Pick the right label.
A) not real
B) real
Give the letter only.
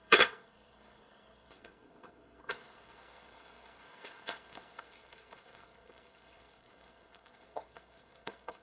A